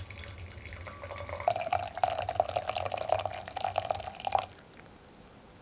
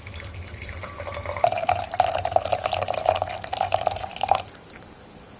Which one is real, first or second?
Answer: first